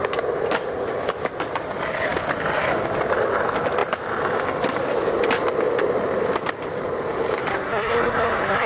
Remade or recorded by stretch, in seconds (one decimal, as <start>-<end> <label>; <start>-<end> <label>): 0.0-7.5 recorded; 7.5-8.7 remade